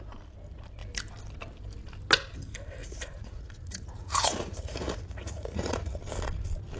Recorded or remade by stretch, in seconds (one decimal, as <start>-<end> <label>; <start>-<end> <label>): 0.0-2.8 recorded; 2.8-6.0 remade; 6.0-6.8 recorded